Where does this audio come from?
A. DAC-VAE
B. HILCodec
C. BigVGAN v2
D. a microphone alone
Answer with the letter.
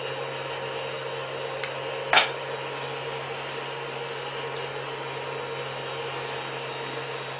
D